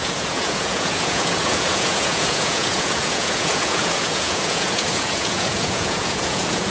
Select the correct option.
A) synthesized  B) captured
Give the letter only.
A